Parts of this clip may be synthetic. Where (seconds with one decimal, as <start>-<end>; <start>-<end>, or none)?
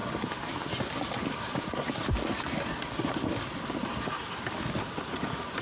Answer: none